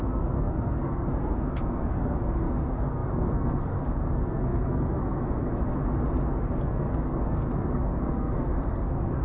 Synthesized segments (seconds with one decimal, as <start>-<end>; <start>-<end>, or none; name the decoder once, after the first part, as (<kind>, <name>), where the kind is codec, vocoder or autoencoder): 0.0-5.5 (codec, SNAC); 6.4-9.2

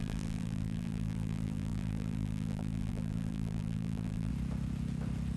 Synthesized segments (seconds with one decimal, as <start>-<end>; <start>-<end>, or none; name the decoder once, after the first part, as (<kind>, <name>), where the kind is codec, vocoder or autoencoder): 0.0-4.3 (vocoder, BigVGAN v2)

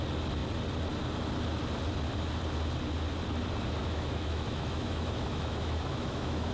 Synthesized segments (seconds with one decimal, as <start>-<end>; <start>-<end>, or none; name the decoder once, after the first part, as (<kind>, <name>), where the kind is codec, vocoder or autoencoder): 3.8-6.5 (autoencoder, DAC-VAE)

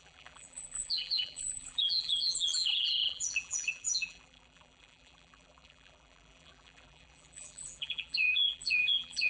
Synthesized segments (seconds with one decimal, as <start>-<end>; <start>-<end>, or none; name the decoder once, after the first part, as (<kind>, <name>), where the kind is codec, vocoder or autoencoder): 0.0-9.3 (vocoder, BigVGAN v2)

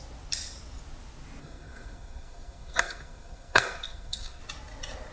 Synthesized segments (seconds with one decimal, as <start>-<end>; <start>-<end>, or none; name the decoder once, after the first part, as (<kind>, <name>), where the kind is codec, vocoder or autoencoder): 1.4-4.4 (codec, SNAC)